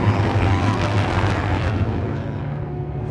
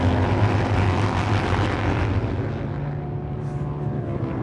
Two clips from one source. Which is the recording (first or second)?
second